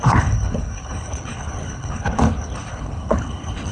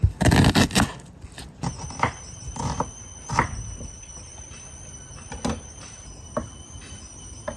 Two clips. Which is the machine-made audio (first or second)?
first